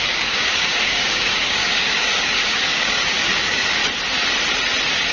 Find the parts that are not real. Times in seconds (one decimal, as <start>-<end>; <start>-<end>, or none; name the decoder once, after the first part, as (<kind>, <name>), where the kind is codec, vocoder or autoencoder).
0.0-3.8 (codec, DAC)